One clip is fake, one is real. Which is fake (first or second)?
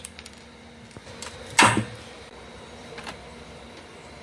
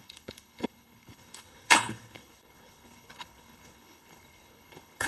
second